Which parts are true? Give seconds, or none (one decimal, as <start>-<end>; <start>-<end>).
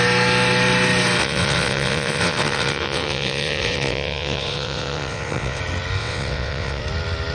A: 0.0-1.2; 5.6-6.0; 6.8-7.3